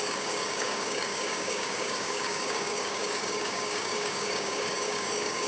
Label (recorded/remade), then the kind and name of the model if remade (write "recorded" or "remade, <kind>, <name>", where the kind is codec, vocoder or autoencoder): remade, codec, DAC